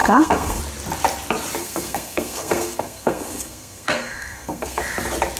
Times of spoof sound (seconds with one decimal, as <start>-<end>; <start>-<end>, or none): 0.0-0.6; 1.6-4.8